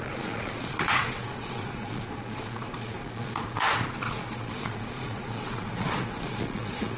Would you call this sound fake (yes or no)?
yes